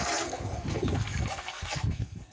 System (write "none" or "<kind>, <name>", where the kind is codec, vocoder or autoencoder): codec, SNAC